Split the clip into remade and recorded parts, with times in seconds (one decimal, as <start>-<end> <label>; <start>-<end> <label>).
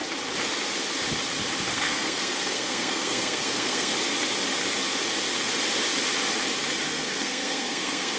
0.0-1.7 recorded; 1.7-3.9 remade; 3.9-6.9 recorded; 6.9-8.2 remade